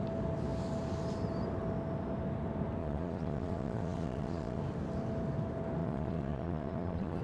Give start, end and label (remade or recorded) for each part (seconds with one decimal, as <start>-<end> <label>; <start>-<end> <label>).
0.0-2.8 recorded; 2.8-4.6 remade; 4.6-5.8 recorded; 5.8-7.2 remade